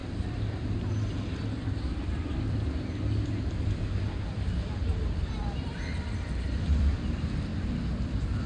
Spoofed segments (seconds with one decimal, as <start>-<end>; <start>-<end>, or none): 0.0-7.5